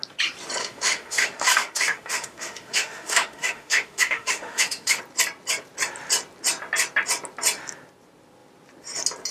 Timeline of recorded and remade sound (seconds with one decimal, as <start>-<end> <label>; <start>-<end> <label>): 0.0-0.6 recorded; 0.6-5.0 remade; 5.0-9.3 recorded